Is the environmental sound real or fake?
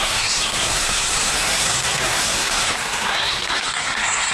fake